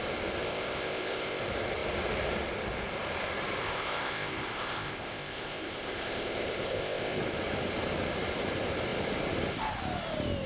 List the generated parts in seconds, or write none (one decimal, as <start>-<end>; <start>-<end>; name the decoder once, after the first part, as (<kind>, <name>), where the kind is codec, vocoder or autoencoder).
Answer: 0.4-1.4 (codec, ZipCodec); 3.6-7.2